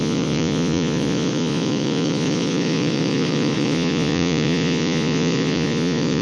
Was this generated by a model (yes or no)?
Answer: yes